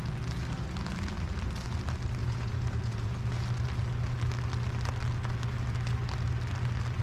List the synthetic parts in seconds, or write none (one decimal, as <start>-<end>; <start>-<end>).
2.2-3.1